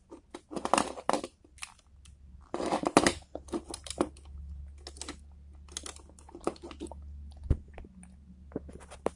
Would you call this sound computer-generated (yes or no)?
no